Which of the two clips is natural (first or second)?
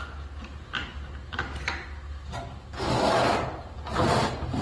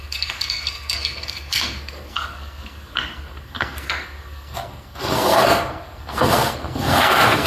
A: first